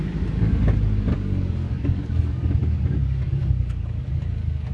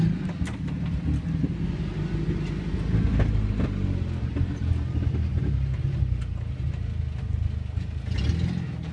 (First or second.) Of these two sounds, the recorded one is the second